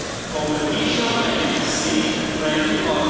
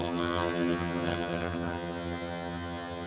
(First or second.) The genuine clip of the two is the first